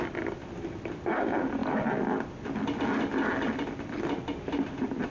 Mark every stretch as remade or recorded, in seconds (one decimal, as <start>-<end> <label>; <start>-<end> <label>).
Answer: 0.0-5.1 recorded